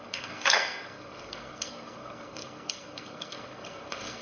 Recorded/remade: remade